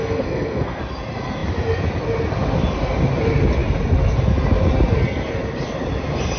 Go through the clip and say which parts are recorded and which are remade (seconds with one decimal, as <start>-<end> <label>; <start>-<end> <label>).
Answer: 0.0-0.8 remade; 0.8-6.4 recorded